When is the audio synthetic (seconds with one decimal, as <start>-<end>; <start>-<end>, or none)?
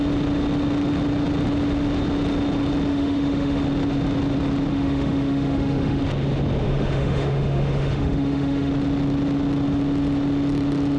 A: 2.9-3.6; 4.7-6.0; 6.6-8.7